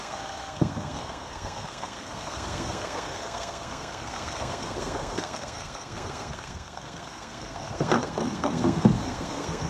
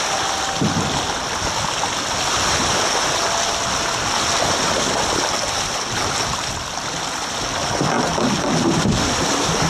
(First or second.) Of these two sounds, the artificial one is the first